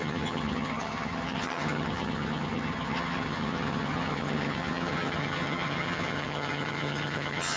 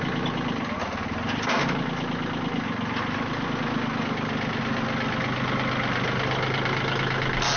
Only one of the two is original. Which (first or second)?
second